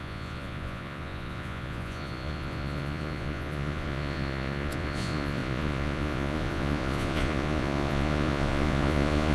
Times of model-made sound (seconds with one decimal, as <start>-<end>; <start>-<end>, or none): 0.0-9.3